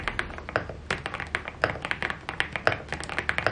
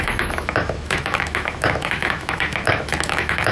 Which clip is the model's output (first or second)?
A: second